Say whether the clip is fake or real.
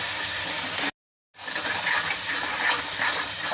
real